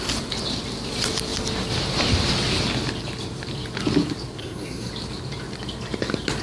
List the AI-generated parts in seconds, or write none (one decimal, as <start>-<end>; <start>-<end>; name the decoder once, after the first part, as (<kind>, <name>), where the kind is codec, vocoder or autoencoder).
4.4-4.9 (codec, SNAC)